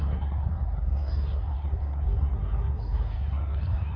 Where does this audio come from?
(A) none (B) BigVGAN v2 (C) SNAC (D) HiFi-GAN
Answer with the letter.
C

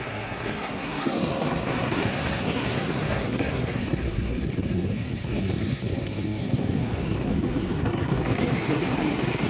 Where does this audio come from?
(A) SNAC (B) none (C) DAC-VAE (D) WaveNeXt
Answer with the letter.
A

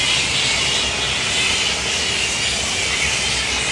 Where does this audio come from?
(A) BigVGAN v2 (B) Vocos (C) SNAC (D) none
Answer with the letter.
D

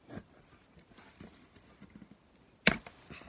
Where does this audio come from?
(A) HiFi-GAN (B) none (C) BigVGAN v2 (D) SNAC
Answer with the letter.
B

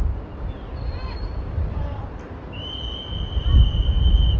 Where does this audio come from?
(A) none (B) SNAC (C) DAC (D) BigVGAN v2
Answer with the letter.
A